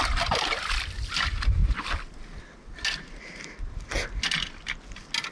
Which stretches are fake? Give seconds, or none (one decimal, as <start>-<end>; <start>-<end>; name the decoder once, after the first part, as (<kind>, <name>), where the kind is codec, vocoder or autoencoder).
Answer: none